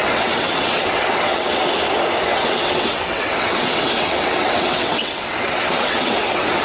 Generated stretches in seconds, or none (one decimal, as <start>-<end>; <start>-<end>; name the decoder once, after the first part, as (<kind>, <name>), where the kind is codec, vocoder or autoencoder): 0.0-1.6 (vocoder, WaveNeXt); 2.3-6.6